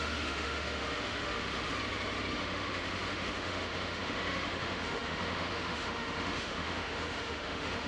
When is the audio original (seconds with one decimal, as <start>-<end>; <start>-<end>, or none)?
1.7-2.3